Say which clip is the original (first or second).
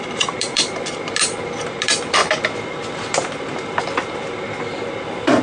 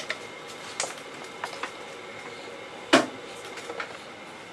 second